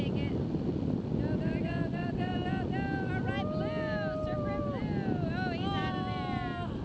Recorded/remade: recorded